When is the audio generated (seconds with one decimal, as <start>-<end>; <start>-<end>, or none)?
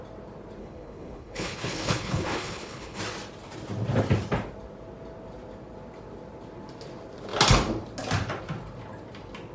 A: 0.6-3.0